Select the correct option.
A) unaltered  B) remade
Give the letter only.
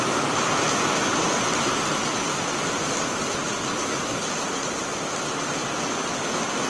A